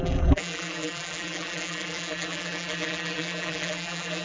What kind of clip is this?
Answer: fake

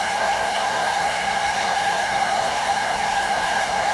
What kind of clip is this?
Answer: fake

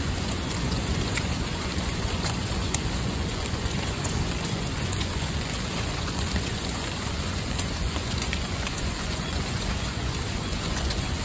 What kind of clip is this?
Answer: fake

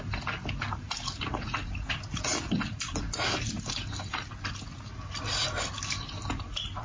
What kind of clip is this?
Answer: real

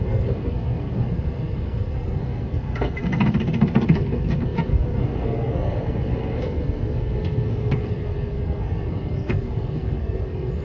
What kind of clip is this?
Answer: fake